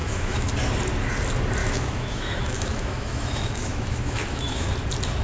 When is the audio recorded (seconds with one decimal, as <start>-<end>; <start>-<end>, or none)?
0.5-1.6; 4.7-5.2